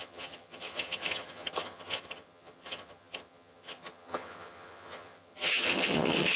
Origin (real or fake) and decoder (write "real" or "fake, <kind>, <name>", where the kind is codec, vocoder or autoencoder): fake, vocoder, HiFi-GAN